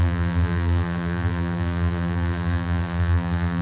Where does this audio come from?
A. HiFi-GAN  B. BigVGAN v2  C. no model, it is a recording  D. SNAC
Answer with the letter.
B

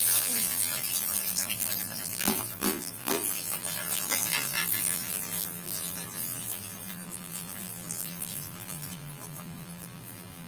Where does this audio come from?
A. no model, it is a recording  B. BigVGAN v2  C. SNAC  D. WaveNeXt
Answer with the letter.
B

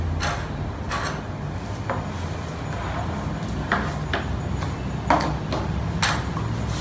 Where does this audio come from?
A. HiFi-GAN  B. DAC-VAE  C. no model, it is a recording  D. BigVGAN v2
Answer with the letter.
C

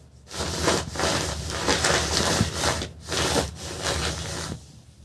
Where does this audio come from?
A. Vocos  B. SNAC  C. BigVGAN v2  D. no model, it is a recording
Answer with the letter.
C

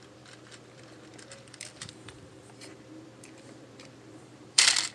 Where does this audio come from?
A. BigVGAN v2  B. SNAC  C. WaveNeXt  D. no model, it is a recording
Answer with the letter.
A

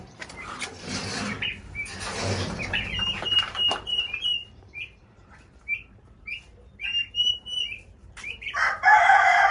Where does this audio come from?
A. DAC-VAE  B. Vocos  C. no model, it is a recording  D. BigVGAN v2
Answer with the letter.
D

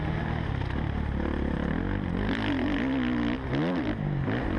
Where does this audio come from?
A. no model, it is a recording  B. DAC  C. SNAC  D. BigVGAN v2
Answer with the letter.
A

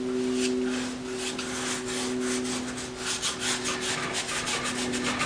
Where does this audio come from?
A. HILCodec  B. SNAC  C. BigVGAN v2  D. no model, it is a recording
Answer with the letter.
D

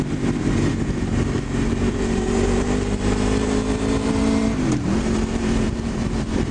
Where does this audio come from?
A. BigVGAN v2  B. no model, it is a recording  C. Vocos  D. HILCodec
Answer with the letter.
A